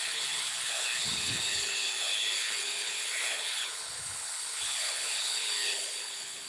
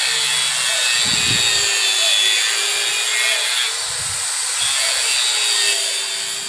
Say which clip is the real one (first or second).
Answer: second